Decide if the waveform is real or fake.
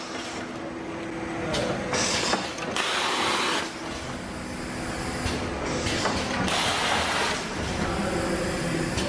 real